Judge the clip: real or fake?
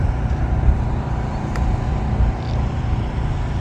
real